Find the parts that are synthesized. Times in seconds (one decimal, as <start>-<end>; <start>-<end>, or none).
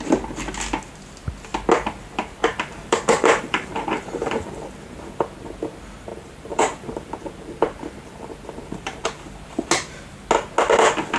2.4-5.1; 6.1-9.2